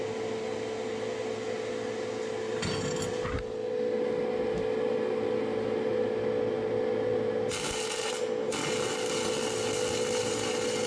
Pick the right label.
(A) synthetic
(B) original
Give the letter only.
B